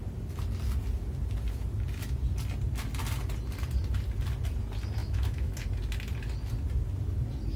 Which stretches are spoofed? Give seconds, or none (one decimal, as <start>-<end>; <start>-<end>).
5.0-5.5